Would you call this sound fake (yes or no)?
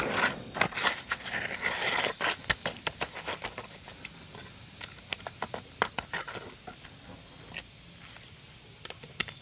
no